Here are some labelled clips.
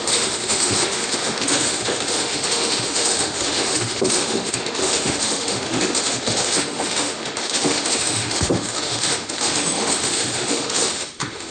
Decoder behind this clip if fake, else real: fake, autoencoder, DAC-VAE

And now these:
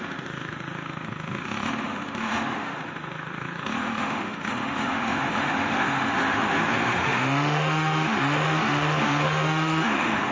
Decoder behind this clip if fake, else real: fake, autoencoder, DAC-VAE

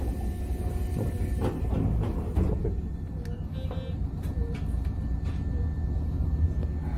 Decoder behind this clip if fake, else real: real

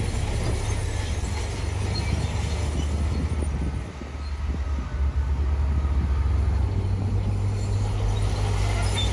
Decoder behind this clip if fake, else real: real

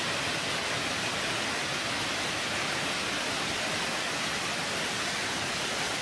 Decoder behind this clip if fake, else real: real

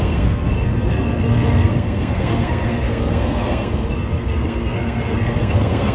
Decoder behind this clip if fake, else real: fake, codec, SNAC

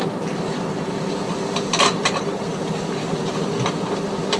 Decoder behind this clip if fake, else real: real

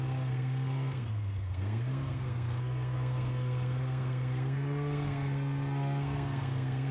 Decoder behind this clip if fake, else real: fake, codec, SNAC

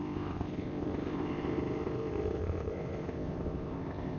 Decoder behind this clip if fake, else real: fake, codec, ZipCodec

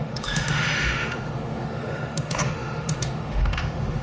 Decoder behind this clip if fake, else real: fake, autoencoder, DAC-VAE